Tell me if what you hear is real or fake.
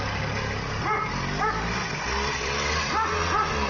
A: real